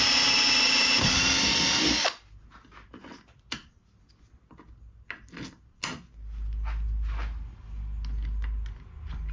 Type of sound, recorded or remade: recorded